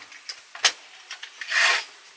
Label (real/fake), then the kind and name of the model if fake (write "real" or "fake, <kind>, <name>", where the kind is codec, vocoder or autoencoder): real